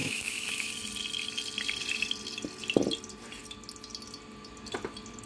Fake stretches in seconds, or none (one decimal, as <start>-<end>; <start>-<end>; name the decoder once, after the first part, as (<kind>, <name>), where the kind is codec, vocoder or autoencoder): 0.0-0.7 (autoencoder, DAC-VAE)